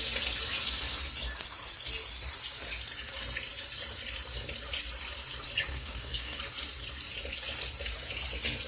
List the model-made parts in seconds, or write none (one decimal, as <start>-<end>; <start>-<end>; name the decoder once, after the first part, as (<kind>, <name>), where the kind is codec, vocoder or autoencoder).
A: 5.7-6.4 (codec, SNAC)

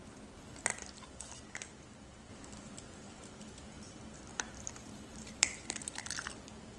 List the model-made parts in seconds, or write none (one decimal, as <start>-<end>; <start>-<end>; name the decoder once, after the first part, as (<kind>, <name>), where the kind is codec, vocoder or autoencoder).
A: 0.0-0.7 (vocoder, BigVGAN v2); 2.3-4.3; 4.9-6.0

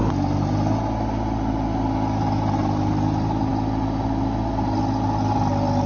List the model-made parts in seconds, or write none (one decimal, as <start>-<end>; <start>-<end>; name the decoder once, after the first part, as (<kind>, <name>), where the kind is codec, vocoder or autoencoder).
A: none

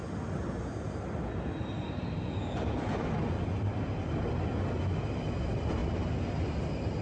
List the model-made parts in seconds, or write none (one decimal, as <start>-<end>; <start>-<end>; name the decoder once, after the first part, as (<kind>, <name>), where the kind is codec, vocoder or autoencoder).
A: none